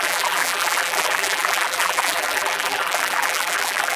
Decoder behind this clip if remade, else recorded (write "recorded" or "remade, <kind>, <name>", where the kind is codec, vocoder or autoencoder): remade, vocoder, BigVGAN v2